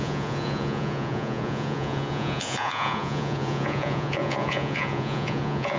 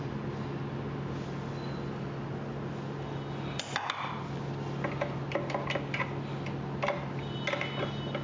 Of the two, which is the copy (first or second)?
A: first